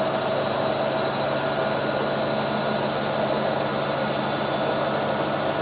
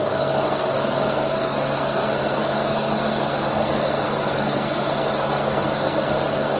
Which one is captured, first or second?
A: first